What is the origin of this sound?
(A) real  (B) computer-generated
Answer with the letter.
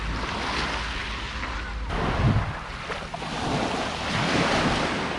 A